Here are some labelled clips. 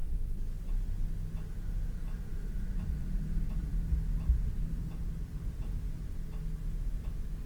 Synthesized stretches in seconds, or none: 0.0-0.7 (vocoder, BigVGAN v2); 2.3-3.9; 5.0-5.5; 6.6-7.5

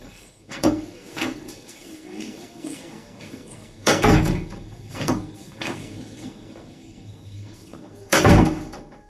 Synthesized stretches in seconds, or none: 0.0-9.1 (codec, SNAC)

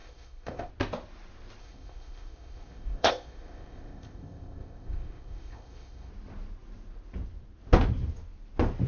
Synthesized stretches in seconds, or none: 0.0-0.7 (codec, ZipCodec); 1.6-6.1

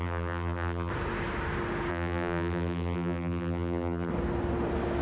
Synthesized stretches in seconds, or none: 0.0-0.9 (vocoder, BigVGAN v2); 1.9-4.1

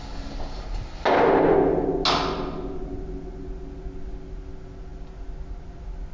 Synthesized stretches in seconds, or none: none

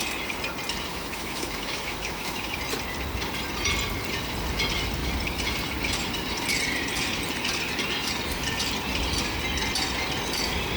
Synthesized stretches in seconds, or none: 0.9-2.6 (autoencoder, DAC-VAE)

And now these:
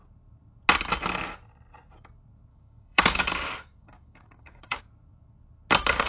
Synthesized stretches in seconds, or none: 2.5-4.8 (codec, DAC)